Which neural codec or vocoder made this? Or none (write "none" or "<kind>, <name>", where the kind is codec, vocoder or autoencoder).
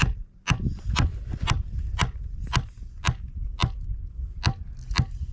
none